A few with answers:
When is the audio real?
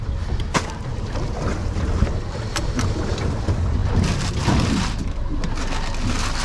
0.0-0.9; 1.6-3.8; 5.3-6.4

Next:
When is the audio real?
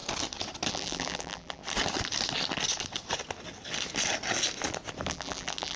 0.0-0.7; 1.6-5.1